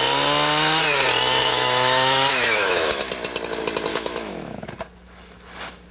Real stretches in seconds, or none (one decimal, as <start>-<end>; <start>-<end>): 0.0-1.4; 3.1-3.9; 4.7-5.9